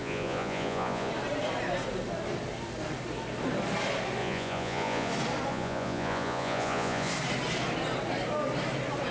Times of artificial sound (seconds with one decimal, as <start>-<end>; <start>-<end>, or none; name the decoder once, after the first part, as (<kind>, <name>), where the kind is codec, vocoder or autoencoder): 0.0-1.1 (vocoder, Vocos); 4.2-5.1; 5.5-7.1